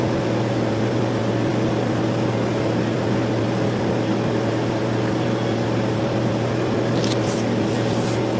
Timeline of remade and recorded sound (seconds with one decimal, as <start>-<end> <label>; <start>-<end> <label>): 0.0-8.4 recorded